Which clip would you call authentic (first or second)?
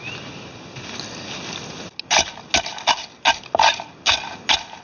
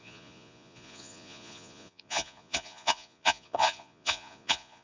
first